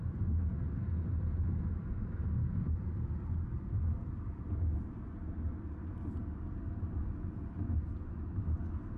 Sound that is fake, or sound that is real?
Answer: real